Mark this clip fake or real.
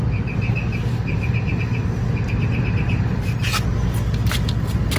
real